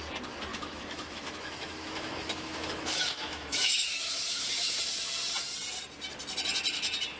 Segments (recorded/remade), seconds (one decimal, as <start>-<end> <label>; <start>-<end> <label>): 0.0-0.5 recorded; 0.5-4.8 remade; 4.8-7.2 recorded